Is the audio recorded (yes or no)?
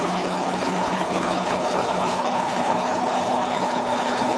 no